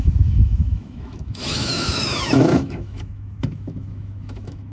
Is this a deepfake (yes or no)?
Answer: yes